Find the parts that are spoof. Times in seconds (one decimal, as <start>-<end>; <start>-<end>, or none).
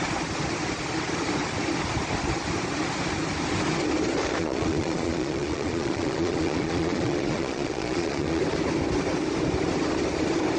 4.4-8.4